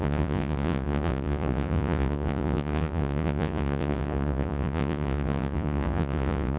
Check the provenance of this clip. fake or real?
fake